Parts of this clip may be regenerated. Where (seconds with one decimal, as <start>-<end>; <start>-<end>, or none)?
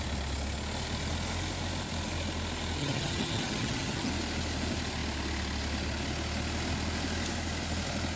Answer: 2.8-4.1